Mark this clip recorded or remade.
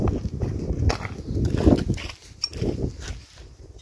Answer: recorded